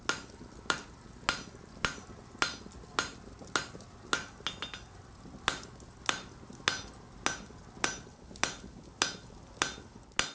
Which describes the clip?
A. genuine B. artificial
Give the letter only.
A